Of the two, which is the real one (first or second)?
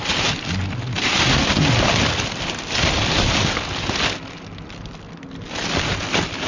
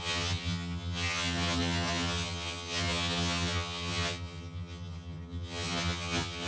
first